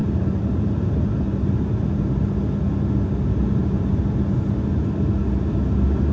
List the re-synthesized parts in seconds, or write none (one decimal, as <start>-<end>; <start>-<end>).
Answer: 0.0-1.6; 3.4-4.0